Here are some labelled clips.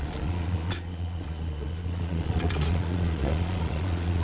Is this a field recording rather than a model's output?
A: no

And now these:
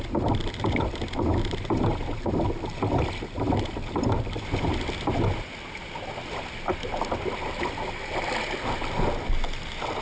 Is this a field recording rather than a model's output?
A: yes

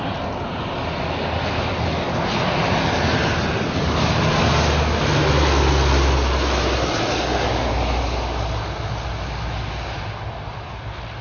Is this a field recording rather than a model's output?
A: yes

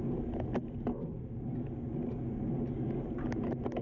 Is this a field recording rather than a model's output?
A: yes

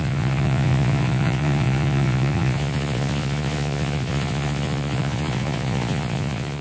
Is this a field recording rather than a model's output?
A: no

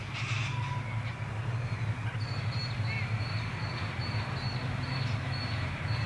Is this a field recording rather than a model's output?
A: yes